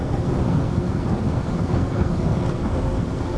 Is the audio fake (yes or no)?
yes